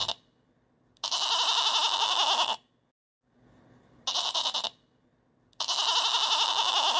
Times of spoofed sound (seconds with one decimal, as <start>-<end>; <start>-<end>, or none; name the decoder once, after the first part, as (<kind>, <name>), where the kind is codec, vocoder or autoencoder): none